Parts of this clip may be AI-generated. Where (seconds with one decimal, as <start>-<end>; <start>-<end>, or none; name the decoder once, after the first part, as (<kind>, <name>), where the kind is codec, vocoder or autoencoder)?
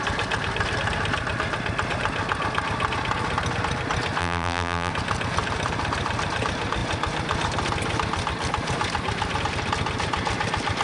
4.2-4.9 (vocoder, BigVGAN v2)